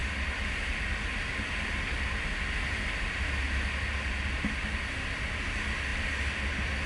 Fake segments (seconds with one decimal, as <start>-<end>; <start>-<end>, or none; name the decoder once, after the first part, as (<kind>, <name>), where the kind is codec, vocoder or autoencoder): none